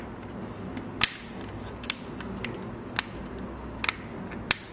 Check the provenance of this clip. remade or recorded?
recorded